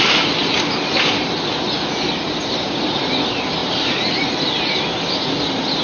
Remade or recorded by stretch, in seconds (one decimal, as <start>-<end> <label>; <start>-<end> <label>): 0.0-5.8 recorded